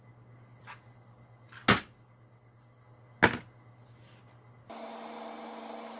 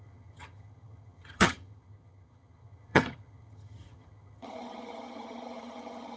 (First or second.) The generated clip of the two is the second